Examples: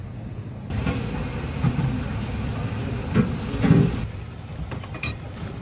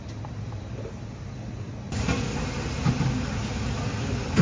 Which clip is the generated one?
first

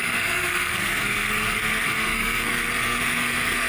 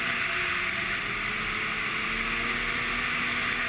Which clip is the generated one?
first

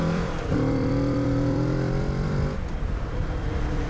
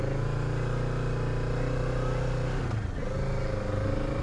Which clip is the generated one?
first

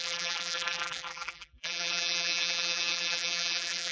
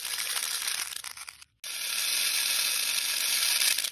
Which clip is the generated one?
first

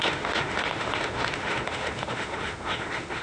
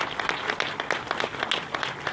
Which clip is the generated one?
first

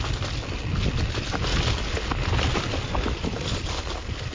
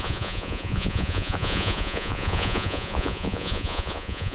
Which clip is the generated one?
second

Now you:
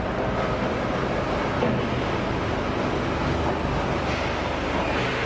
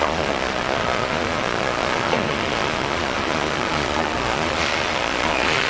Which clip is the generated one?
second